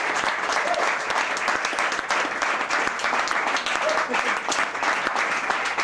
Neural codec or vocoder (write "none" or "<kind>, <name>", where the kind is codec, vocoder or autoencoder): none